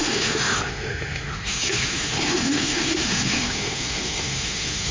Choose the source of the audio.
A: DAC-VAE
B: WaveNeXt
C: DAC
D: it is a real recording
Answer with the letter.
A